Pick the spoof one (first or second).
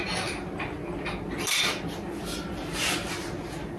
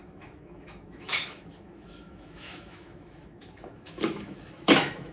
second